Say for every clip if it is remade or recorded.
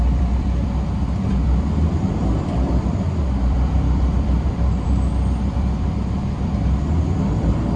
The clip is remade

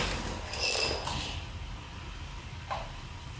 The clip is recorded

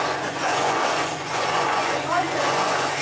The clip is remade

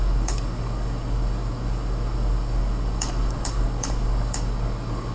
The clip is remade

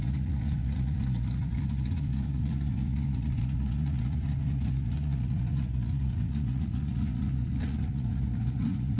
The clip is remade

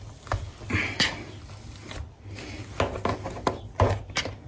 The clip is recorded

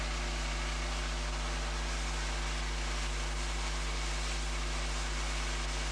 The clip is recorded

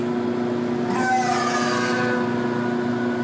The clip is recorded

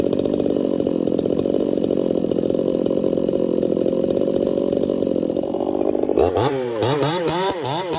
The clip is remade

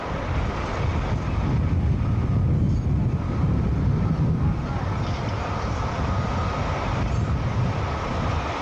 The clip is recorded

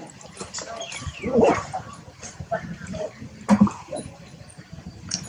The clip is recorded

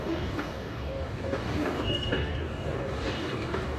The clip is remade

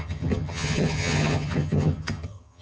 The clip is remade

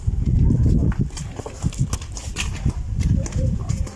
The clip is recorded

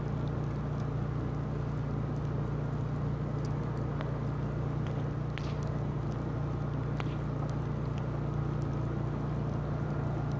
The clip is recorded